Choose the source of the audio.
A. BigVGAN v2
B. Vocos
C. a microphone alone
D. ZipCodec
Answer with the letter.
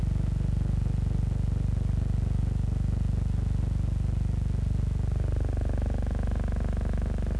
C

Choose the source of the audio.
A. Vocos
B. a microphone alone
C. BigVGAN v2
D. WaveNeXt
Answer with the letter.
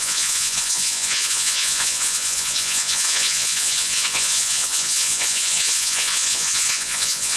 A